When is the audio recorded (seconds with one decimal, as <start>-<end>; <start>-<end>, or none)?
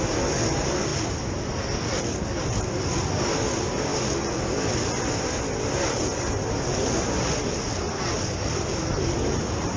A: 0.0-0.9; 3.0-9.8